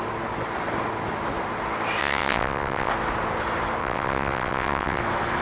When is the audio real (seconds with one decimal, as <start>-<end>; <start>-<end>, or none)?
0.0-2.0; 2.9-3.8; 5.0-5.4